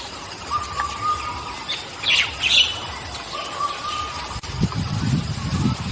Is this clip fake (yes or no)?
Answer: no